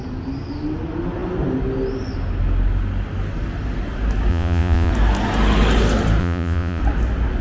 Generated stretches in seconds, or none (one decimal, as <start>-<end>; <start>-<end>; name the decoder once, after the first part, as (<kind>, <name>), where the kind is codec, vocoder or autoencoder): 4.3-4.9 (vocoder, Vocos); 6.2-6.8